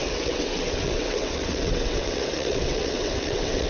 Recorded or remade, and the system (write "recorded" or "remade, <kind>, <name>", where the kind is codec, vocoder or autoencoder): remade, vocoder, WaveNeXt